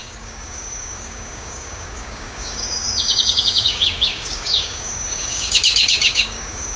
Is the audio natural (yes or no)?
no